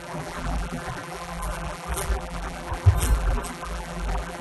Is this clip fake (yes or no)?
yes